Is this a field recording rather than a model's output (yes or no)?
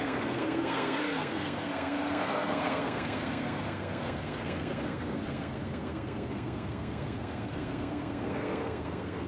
no